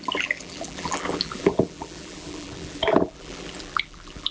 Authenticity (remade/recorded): remade